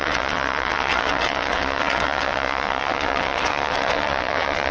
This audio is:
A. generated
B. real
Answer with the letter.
A